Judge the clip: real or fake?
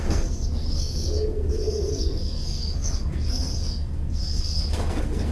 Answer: fake